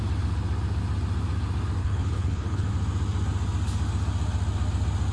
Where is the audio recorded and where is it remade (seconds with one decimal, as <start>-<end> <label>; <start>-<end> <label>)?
0.0-1.8 recorded; 1.8-2.7 remade; 2.7-5.1 recorded